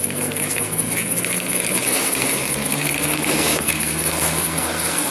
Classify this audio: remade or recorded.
remade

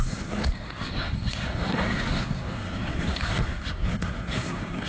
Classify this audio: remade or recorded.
remade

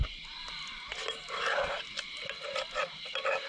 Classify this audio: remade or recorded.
recorded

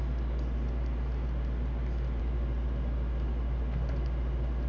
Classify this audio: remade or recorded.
recorded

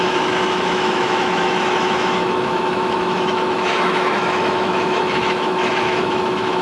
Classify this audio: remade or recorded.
remade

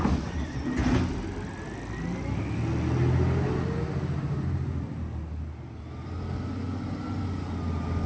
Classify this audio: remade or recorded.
recorded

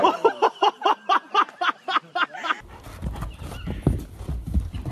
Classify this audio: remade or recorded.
recorded